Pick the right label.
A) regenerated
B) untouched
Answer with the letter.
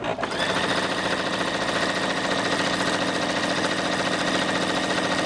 B